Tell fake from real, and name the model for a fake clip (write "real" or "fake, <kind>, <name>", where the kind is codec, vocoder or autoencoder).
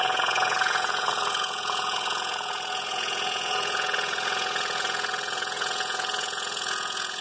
fake, vocoder, Vocos